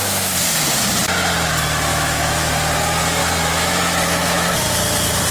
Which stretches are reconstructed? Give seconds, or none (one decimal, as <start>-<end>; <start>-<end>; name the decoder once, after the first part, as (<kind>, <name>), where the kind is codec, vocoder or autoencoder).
1.9-2.5 (autoencoder, DAC-VAE); 3.2-4.5